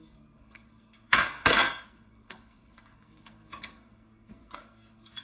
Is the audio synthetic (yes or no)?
yes